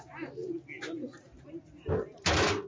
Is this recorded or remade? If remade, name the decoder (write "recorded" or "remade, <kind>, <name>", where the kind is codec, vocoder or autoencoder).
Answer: recorded